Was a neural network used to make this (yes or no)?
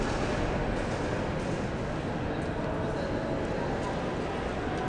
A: no